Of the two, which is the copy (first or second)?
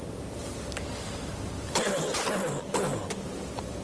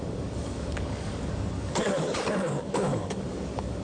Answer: second